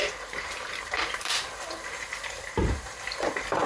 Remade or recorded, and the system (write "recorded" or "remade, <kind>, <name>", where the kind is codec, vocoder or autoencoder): remade, vocoder, BigVGAN v2